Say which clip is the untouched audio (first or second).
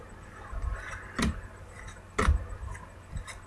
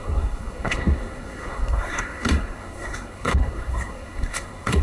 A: first